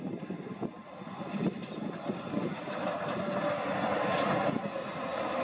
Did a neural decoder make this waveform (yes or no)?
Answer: no